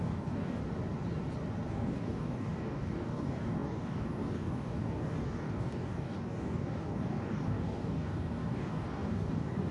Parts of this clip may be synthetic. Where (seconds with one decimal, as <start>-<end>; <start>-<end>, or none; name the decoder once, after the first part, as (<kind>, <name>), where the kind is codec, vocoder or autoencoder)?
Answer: 0.0-0.6 (codec, DAC); 1.7-9.7